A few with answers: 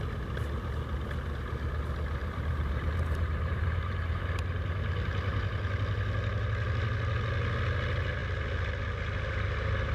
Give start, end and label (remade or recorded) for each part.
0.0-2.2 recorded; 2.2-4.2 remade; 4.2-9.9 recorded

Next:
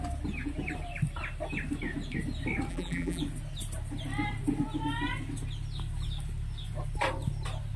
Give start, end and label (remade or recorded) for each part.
0.0-2.7 recorded; 2.7-3.2 remade; 3.2-7.8 recorded

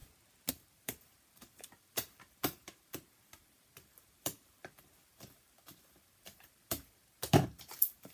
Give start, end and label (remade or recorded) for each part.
0.0-0.5 recorded; 0.5-8.1 remade

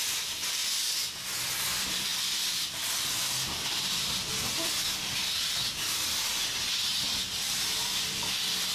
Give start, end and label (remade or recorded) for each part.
0.0-0.6 remade; 0.6-1.6 recorded; 1.6-6.3 remade; 6.3-6.9 recorded; 6.9-8.7 remade